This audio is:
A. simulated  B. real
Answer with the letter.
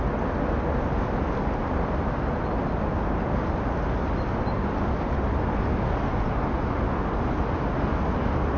B